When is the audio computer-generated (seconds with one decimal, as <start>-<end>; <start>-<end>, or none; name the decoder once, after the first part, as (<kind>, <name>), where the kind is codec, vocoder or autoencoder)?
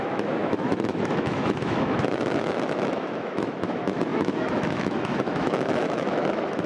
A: 0.0-6.7 (autoencoder, DAC-VAE)